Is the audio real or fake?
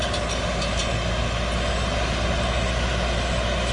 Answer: real